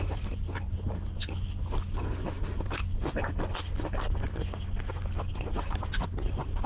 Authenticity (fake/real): real